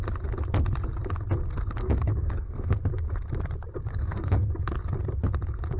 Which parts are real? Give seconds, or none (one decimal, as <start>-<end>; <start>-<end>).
0.0-1.8; 2.8-3.9; 4.5-5.8

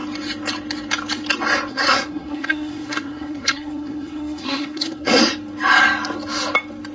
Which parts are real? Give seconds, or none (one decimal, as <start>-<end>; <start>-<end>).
0.0-1.7; 5.2-6.9

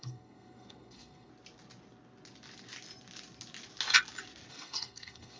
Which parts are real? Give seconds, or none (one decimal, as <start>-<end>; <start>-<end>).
1.3-4.5

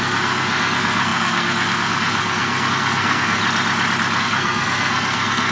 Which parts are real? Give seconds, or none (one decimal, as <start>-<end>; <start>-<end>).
3.4-4.2

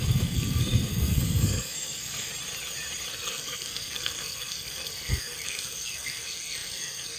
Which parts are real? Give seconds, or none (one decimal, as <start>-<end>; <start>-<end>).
2.3-3.1